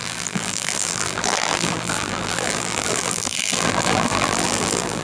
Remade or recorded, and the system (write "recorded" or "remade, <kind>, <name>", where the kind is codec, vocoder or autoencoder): remade, vocoder, BigVGAN v2